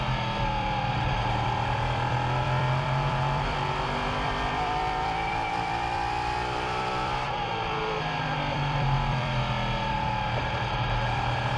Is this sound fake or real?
fake